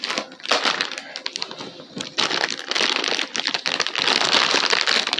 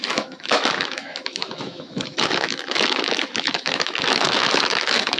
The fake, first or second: second